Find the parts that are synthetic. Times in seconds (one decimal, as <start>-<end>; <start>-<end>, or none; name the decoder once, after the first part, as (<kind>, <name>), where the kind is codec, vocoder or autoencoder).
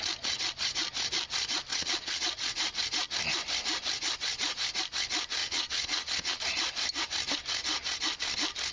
1.7-2.2 (vocoder, Vocos); 5.4-6.4